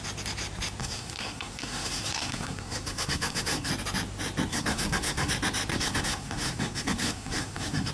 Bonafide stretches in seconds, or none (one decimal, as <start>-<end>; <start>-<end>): 0.0-0.8; 3.7-4.5; 5.3-5.7